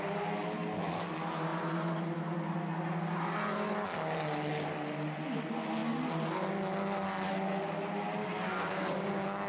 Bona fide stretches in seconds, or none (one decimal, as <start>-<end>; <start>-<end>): 0.0-8.2

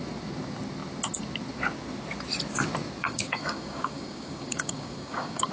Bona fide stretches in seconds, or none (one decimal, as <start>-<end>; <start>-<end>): 0.0-3.0

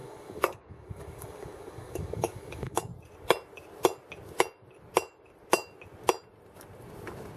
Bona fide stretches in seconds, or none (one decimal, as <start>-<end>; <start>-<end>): 2.9-7.4

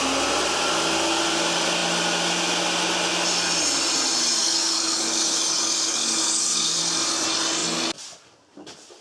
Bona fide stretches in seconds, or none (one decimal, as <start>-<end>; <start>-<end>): 0.0-4.4; 6.8-9.0

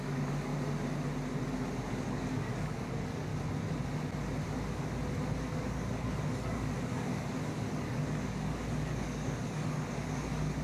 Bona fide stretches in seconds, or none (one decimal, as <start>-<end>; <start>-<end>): 0.5-1.9; 3.3-5.5